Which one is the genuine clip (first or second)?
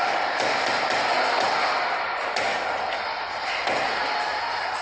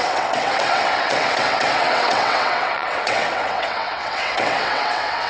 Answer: first